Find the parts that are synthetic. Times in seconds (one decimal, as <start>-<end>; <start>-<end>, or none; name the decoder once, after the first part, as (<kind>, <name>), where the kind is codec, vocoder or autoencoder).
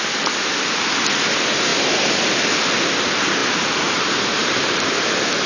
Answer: 3.4-4.9 (vocoder, BigVGAN v2)